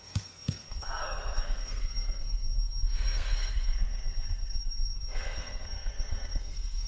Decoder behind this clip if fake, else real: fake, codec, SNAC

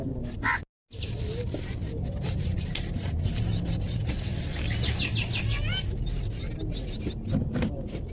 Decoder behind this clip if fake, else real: real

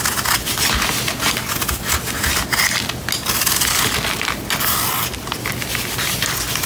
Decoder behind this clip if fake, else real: real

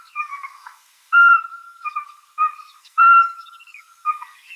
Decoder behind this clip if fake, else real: fake, codec, SNAC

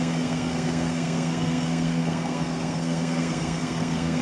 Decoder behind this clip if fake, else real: fake, codec, SNAC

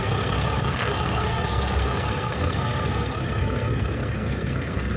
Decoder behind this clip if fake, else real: fake, codec, SNAC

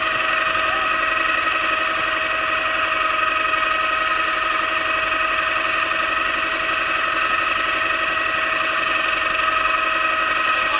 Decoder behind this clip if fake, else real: real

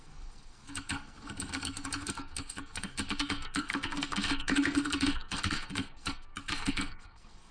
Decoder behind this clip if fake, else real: fake, codec, SNAC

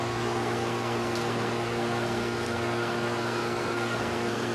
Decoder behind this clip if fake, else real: fake, codec, SNAC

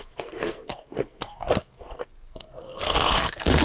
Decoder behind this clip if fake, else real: fake, codec, SNAC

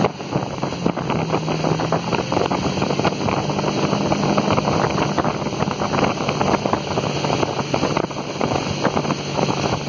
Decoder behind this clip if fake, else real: real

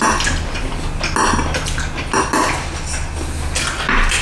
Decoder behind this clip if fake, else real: real